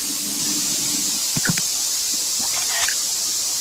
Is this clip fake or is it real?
real